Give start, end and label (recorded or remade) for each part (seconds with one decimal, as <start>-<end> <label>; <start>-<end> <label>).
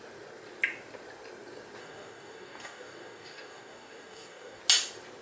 0.0-1.8 recorded; 1.8-4.6 remade; 4.6-5.2 recorded